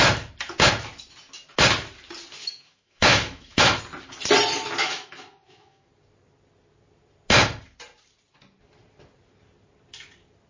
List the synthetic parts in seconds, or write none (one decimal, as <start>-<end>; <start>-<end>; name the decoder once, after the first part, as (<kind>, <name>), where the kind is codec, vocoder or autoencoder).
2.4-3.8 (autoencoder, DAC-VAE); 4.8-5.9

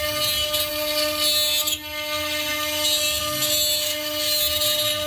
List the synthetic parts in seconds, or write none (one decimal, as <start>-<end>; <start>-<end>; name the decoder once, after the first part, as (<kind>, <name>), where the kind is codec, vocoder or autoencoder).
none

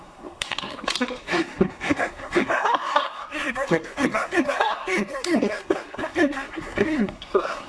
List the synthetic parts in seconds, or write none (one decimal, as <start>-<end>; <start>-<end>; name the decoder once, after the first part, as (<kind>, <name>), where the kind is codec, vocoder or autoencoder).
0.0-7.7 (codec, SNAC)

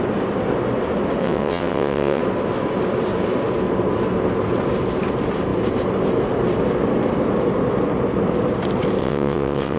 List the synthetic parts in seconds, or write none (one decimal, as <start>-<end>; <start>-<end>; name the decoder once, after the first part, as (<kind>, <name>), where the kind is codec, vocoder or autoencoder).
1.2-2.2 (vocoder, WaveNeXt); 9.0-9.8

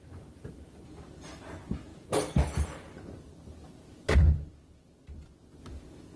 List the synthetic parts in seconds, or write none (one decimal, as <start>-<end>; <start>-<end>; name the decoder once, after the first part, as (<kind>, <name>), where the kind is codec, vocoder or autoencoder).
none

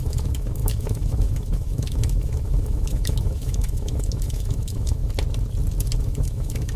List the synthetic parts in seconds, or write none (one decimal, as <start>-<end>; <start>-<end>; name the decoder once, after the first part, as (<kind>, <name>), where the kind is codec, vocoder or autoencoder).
0.0-5.0 (autoencoder, DAC-VAE); 6.0-6.8

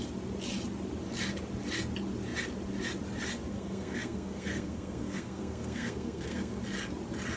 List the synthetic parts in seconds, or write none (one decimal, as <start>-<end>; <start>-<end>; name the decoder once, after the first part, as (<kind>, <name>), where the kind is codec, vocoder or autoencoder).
3.5-6.6 (codec, SNAC)

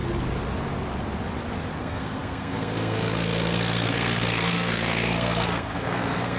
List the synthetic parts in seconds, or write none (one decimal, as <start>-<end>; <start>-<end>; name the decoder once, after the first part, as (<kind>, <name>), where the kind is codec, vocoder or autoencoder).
1.8-6.4 (codec, SNAC)